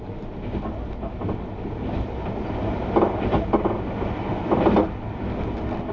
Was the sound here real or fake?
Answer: real